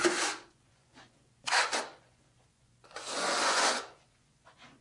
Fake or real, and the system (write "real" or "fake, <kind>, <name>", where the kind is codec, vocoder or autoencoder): fake, vocoder, Vocos